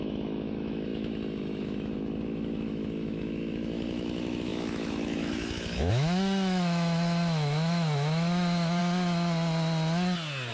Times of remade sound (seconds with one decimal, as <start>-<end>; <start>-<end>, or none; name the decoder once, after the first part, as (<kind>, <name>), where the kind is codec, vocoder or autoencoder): 0.0-8.8 (autoencoder, DAC-VAE)